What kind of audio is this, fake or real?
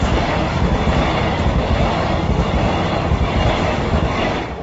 fake